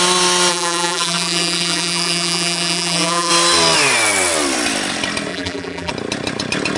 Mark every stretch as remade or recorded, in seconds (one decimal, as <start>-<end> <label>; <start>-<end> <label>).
0.0-0.5 recorded; 0.5-3.3 remade; 3.3-5.3 recorded; 5.3-5.9 remade; 5.9-6.8 recorded